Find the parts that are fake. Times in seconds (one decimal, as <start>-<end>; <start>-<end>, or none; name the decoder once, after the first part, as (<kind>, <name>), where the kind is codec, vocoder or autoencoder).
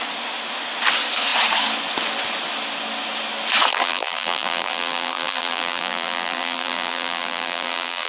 3.7-8.1 (vocoder, BigVGAN v2)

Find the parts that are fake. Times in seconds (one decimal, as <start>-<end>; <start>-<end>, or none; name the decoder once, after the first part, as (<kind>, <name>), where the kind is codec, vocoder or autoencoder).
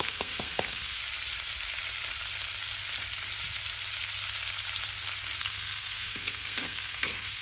0.0-1.0 (codec, SNAC); 5.4-7.4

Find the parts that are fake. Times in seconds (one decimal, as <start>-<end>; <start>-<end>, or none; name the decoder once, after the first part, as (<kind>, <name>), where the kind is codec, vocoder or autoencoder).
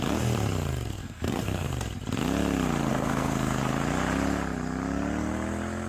0.9-1.7 (codec, SNAC); 2.9-3.6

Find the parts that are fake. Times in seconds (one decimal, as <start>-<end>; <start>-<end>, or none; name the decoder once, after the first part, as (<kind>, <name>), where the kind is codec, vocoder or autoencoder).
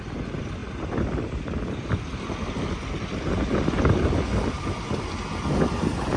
none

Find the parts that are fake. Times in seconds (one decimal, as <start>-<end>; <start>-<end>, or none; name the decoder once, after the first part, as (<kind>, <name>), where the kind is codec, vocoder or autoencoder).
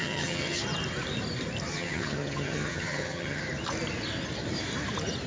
0.0-0.6 (vocoder, HiFi-GAN); 1.7-3.4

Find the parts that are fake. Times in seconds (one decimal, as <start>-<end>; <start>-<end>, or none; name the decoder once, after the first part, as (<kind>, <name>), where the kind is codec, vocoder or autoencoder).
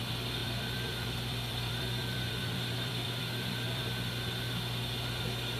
0.4-3.8 (vocoder, BigVGAN v2)